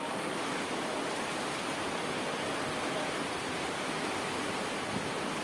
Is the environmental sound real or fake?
real